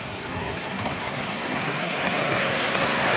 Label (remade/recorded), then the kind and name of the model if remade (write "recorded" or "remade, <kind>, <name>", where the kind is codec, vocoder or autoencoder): remade, codec, SNAC